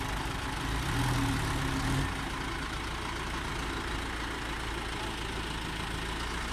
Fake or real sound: real